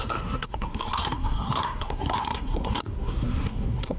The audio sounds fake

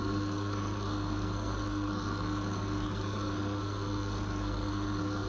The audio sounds fake